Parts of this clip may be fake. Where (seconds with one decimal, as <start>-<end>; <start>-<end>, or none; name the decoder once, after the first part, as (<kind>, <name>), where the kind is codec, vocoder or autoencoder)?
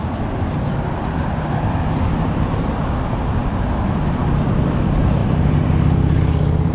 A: 5.2-6.7 (vocoder, BigVGAN v2)